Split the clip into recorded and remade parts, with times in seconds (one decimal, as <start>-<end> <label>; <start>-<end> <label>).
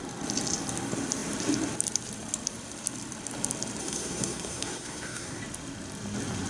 0.0-3.8 recorded; 3.8-5.4 remade; 5.4-6.5 recorded